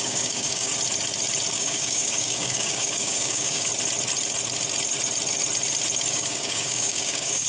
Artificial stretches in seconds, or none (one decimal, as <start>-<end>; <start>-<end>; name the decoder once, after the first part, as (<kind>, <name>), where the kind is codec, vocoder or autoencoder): 0.0-0.7 (codec, DAC); 1.5-3.7; 6.1-7.5